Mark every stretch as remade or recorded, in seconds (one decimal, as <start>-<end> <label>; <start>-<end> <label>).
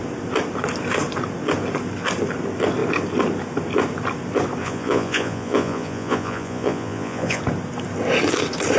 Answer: 0.0-4.6 recorded; 4.6-7.4 remade; 7.4-8.8 recorded